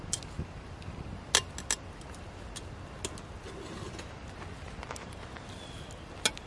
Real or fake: real